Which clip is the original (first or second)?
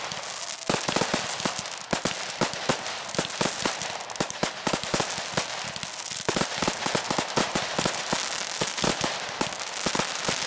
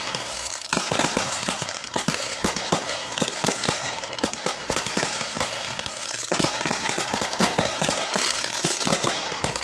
first